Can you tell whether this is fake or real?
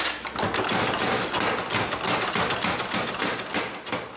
real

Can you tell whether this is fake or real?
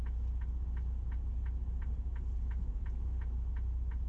real